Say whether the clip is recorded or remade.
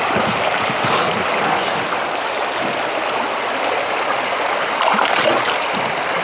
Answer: recorded